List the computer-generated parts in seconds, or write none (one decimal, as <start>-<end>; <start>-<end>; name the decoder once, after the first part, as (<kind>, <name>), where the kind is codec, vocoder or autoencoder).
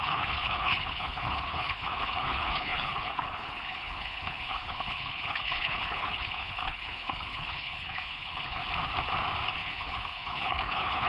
0.0-8.6 (codec, HILCodec); 9.5-11.1